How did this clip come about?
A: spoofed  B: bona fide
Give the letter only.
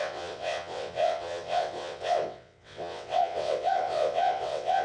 A